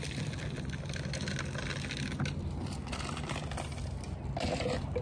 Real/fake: real